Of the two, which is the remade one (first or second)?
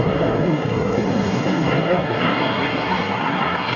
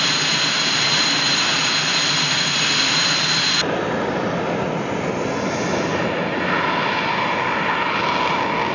first